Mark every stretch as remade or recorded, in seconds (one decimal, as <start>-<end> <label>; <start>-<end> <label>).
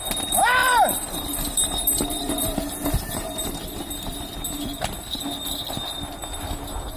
0.0-0.6 recorded; 0.6-4.8 remade; 4.8-7.0 recorded